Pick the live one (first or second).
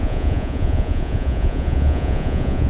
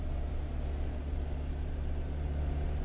second